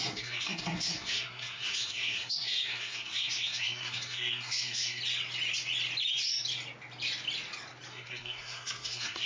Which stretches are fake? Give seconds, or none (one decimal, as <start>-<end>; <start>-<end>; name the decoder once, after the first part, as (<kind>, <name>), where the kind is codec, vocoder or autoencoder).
0.0-5.0 (codec, SNAC); 7.9-9.3